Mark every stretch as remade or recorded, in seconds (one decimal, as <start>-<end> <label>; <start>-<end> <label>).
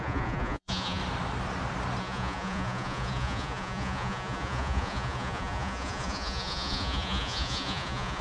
0.0-1.0 remade; 1.0-2.0 recorded; 2.0-8.2 remade